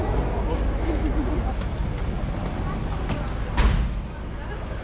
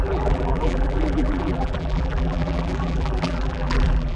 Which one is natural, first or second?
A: first